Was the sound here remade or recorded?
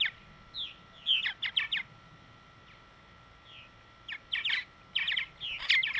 recorded